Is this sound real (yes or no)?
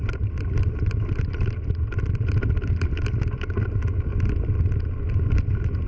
yes